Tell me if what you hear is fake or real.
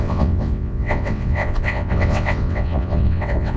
fake